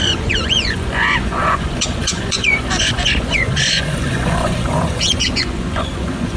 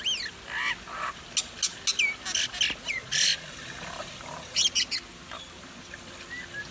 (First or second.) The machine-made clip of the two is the first